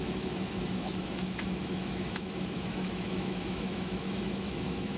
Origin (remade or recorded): remade